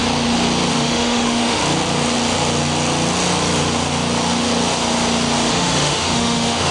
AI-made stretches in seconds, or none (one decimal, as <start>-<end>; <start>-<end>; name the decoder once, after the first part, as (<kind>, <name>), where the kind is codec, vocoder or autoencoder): 0.7-1.6 (autoencoder, DAC-VAE); 5.5-6.7